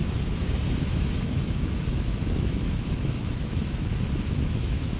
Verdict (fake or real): fake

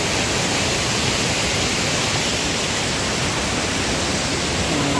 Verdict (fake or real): real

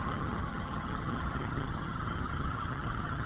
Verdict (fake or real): fake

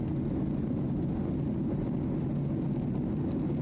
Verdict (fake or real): real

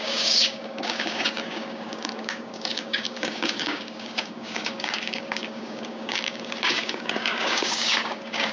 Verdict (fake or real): fake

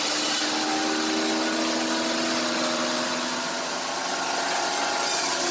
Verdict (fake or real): real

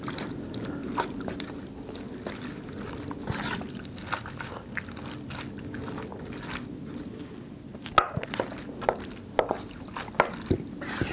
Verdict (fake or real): real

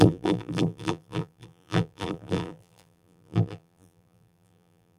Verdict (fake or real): fake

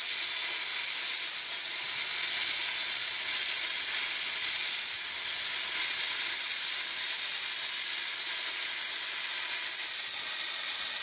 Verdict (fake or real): real